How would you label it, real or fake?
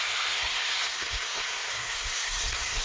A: fake